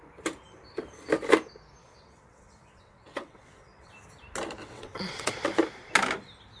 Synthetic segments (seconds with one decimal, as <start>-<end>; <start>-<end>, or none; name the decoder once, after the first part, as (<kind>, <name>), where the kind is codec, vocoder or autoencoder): 1.8-3.9 (vocoder, WaveNeXt); 4.6-5.3